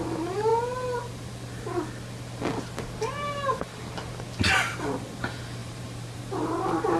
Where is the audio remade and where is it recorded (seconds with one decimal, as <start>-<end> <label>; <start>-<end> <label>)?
0.0-5.6 recorded; 5.6-6.2 remade; 6.2-7.0 recorded